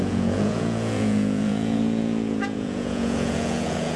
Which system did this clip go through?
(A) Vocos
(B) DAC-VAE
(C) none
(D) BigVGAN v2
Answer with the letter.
A